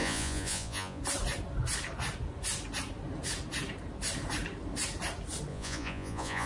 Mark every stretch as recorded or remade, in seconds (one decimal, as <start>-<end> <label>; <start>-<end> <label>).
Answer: 0.0-1.0 remade; 1.0-5.5 recorded; 5.5-6.5 remade